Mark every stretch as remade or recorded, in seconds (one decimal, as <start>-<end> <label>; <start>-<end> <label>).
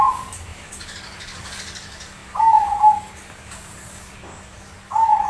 0.0-5.3 remade